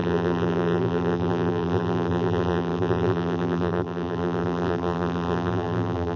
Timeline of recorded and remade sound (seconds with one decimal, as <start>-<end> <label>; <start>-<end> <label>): 0.0-6.2 remade

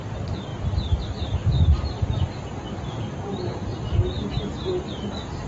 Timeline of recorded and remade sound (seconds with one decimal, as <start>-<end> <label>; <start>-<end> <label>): 0.0-0.5 remade; 0.5-1.0 recorded; 1.0-3.7 remade; 3.7-4.4 recorded; 4.4-5.5 remade

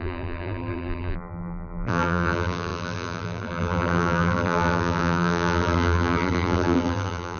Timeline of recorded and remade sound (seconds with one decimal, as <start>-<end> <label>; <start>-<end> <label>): 0.0-7.4 remade

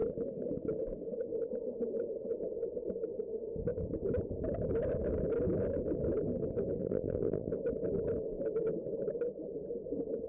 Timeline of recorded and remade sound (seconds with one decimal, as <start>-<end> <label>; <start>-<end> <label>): 0.0-6.8 recorded; 6.8-7.5 remade; 7.5-10.3 recorded

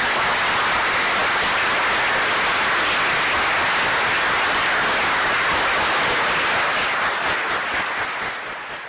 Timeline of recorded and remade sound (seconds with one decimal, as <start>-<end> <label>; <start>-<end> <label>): 0.0-8.9 recorded

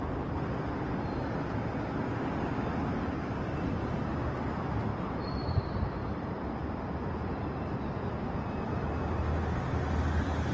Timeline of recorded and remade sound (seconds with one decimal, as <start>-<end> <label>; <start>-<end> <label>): 0.0-4.9 recorded; 4.9-7.1 remade; 7.1-10.5 recorded